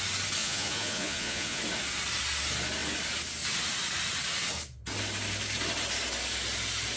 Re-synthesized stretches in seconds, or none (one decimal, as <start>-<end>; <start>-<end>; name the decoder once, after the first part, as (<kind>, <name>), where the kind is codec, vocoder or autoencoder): 0.4-1.6 (vocoder, Vocos)